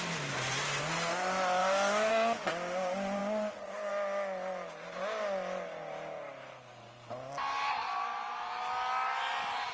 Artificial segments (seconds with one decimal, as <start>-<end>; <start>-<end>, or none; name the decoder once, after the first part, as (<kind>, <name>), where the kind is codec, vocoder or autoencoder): none